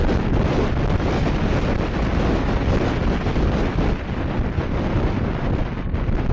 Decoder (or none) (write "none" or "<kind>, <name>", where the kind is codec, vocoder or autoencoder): none